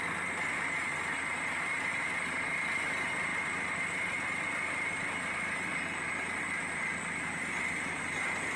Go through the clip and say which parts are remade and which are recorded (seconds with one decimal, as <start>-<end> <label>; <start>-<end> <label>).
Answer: 0.0-8.6 recorded

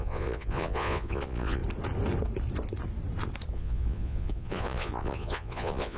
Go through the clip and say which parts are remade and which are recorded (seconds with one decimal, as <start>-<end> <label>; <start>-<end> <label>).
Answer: 0.0-1.6 remade; 1.6-3.5 recorded; 3.5-6.0 remade

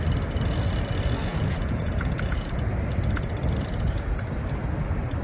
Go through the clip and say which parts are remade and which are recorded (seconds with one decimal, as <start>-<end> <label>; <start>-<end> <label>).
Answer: 0.0-1.2 recorded; 1.2-2.7 remade; 2.7-5.2 recorded

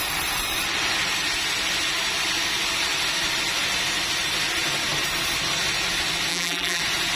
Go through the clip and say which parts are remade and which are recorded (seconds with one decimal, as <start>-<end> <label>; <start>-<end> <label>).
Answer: 0.0-6.3 recorded; 6.3-6.8 remade; 6.8-7.2 recorded